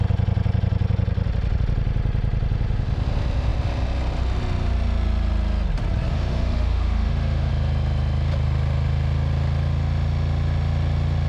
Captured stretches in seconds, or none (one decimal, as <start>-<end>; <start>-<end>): 0.0-6.1; 7.5-11.3